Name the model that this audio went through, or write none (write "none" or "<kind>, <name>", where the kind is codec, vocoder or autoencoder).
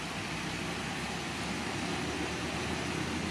none